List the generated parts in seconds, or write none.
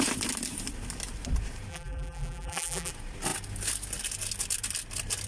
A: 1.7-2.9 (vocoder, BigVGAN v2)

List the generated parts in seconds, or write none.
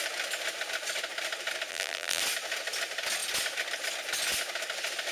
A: 1.7-2.2 (vocoder, BigVGAN v2)